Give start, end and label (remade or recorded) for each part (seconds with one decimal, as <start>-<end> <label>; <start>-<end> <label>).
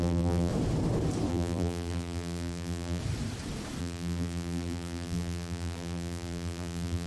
0.0-0.5 remade; 0.5-1.3 recorded; 1.3-3.0 remade; 3.0-3.8 recorded; 3.8-7.1 remade